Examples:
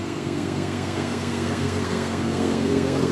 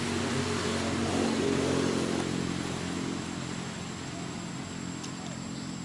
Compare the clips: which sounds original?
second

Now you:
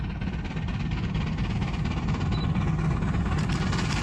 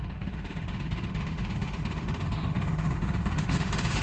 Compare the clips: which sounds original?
first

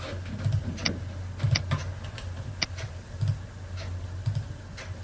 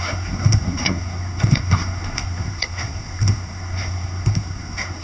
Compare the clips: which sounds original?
first